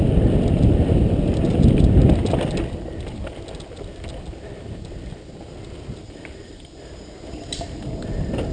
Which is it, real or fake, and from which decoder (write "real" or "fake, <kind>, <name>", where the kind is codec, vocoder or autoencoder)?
real